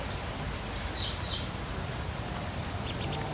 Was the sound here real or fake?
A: real